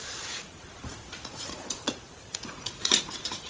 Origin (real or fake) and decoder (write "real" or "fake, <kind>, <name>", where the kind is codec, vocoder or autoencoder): fake, vocoder, Vocos